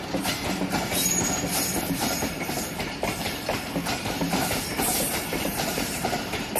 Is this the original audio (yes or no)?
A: no